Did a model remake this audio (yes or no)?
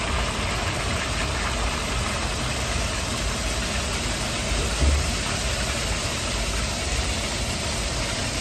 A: no